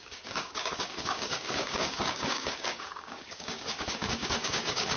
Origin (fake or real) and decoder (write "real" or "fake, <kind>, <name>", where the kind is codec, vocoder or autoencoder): fake, codec, DAC